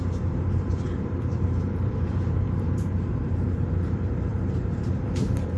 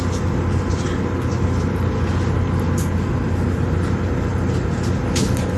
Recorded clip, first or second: second